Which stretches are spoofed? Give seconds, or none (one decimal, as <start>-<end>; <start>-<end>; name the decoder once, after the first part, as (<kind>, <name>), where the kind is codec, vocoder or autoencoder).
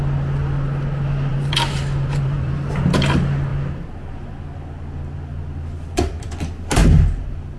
1.3-2.8 (vocoder, BigVGAN v2)